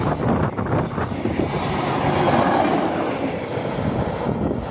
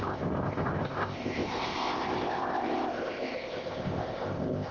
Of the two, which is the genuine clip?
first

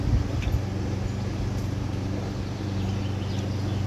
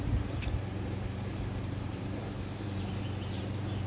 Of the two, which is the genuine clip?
first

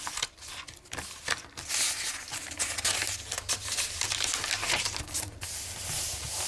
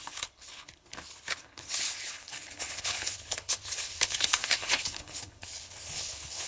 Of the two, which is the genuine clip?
first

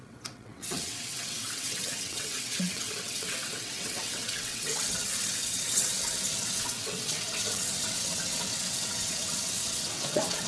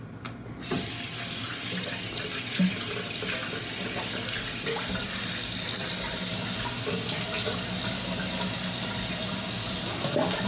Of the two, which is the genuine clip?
second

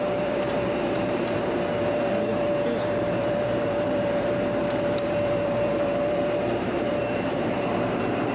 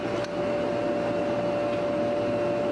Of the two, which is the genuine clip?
second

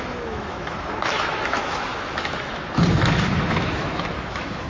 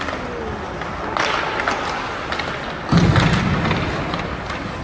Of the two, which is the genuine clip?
second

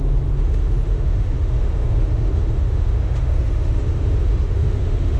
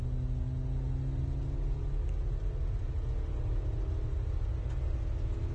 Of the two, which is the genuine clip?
second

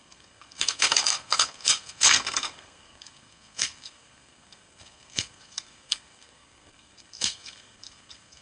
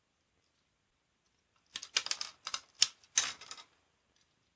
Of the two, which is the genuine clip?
second